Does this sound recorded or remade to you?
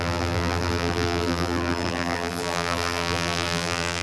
remade